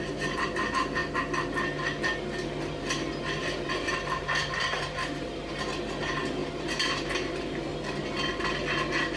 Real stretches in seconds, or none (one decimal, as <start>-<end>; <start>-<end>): 1.0-3.2; 7.7-9.2